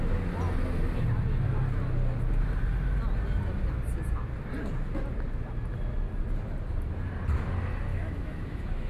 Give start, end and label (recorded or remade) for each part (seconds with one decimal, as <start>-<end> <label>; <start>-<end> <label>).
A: 0.0-7.9 recorded; 7.9-8.9 remade